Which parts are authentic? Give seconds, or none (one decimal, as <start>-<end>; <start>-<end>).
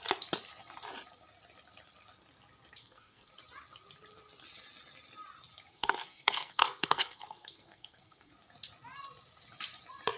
0.0-2.8; 3.3-5.7; 8.3-10.2